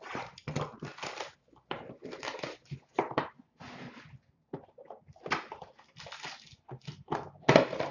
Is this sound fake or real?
real